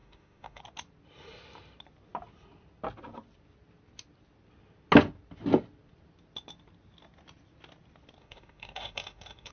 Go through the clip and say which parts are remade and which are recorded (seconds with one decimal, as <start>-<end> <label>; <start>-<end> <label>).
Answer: 0.0-0.6 remade; 0.6-8.2 recorded; 8.2-9.5 remade